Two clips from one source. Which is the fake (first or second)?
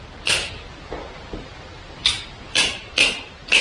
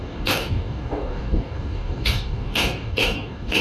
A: second